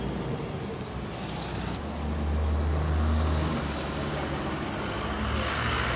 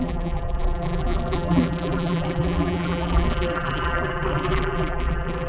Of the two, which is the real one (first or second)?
first